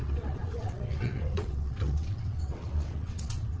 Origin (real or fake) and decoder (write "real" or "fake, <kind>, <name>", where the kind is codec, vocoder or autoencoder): fake, vocoder, WaveNeXt